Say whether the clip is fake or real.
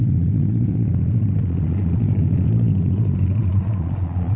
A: fake